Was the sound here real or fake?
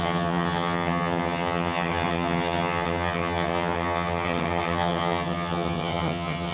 fake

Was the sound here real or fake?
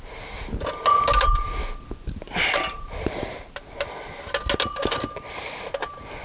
real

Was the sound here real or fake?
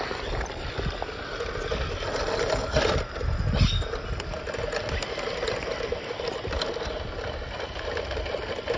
real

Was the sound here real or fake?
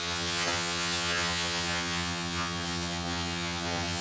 fake